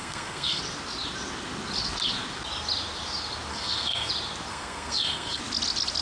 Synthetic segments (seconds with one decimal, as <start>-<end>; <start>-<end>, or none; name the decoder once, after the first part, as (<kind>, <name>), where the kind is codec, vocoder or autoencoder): 0.0-0.6 (codec, SNAC); 3.5-4.1; 4.5-5.4